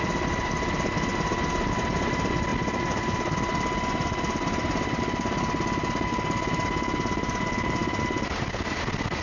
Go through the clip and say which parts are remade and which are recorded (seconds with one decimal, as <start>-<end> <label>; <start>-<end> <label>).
0.0-9.2 recorded